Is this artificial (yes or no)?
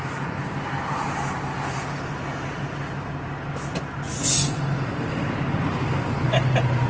no